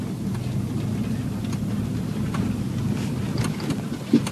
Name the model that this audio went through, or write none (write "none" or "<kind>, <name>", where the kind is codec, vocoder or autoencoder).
none